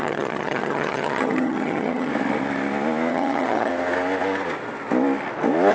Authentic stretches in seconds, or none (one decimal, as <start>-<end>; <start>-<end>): 2.1-3.1; 3.7-5.7